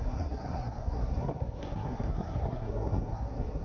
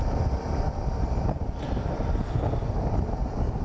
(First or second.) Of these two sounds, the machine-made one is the first